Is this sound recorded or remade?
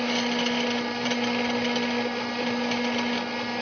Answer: recorded